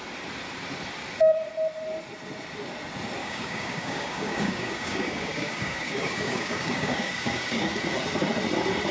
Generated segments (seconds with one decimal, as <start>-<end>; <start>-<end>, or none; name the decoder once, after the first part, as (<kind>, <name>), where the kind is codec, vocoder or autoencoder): 3.2-7.8 (codec, DAC)